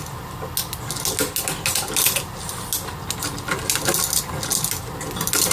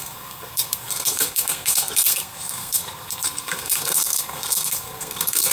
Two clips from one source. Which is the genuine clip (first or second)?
first